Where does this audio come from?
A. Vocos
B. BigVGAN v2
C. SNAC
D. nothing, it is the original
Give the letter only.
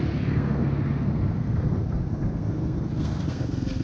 C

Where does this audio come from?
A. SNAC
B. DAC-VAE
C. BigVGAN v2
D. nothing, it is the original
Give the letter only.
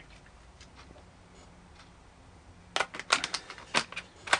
D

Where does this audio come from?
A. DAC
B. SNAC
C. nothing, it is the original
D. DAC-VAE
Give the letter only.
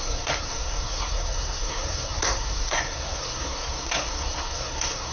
B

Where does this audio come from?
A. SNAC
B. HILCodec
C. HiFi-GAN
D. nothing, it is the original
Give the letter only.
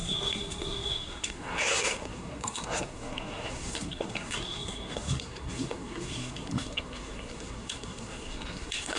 A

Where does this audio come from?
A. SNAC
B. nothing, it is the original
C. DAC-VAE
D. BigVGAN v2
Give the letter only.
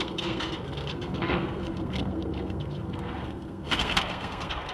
A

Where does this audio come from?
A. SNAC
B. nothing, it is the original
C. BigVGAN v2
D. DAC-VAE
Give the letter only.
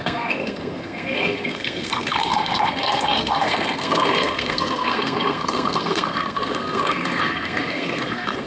A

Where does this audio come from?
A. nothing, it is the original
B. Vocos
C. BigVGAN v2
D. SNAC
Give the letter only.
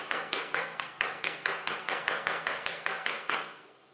D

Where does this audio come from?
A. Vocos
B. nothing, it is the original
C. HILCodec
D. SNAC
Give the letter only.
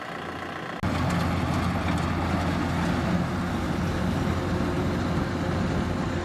B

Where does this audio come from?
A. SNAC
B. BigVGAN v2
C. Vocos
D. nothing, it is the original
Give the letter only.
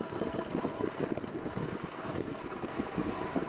A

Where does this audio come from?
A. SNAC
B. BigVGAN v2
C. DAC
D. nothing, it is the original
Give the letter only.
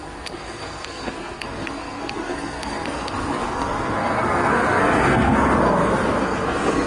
A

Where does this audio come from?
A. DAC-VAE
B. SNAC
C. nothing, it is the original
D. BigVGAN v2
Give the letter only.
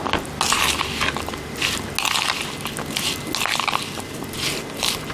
C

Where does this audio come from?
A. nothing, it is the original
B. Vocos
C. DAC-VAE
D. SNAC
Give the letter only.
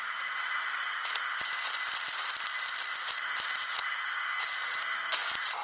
A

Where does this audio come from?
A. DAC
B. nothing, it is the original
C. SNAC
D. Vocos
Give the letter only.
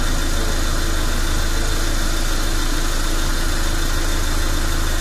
B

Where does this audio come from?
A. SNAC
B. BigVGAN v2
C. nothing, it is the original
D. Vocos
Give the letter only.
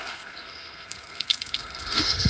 A